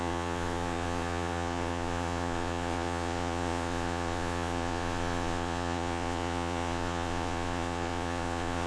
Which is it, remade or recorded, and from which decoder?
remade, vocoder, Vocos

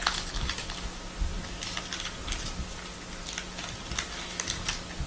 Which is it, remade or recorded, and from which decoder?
recorded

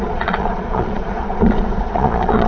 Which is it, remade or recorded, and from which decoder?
remade, vocoder, Vocos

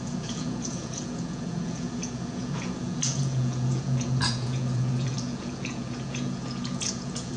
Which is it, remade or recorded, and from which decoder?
remade, vocoder, Vocos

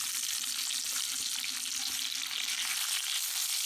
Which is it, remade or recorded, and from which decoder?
recorded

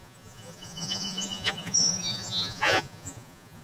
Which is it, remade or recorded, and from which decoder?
remade, vocoder, Vocos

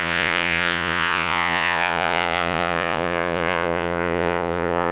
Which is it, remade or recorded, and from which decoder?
remade, vocoder, Vocos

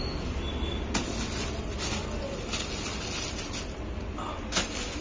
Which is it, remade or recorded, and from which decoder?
recorded